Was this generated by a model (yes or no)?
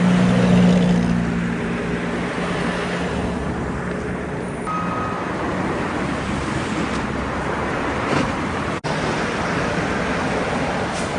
no